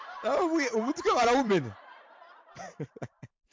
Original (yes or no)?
no